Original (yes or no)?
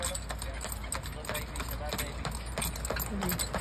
yes